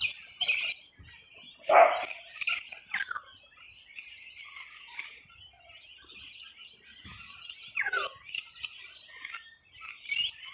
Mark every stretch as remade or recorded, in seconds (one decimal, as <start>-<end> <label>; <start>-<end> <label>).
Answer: 0.0-10.5 recorded